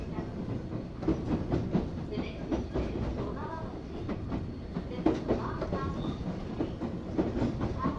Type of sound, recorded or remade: recorded